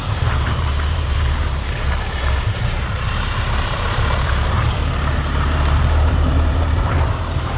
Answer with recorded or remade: remade